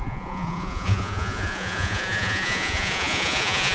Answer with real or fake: fake